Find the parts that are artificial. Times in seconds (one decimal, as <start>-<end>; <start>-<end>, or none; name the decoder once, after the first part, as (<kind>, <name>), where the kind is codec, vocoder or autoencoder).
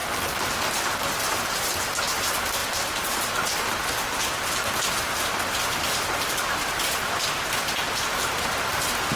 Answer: 2.6-3.3 (vocoder, BigVGAN v2); 3.8-7.4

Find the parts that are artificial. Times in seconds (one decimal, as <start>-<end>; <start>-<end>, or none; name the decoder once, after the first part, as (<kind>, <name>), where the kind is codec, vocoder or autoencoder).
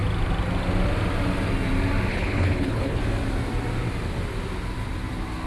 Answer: 2.1-3.0 (codec, HILCodec)